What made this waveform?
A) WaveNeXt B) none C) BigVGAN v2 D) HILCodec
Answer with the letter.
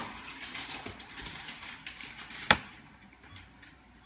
C